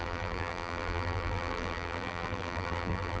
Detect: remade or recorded remade